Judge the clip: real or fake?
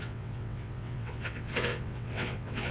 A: fake